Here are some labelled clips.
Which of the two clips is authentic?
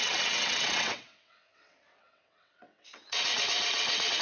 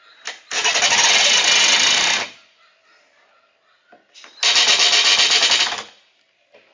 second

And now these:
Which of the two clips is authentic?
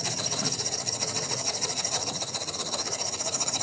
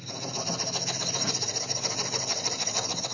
second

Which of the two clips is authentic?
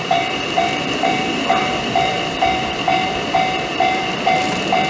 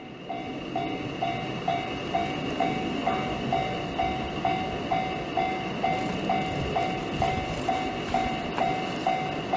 second